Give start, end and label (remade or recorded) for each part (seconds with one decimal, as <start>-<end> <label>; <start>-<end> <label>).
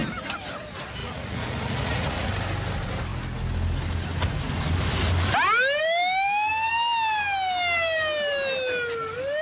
0.0-1.0 recorded; 1.0-2.3 remade; 2.3-9.4 recorded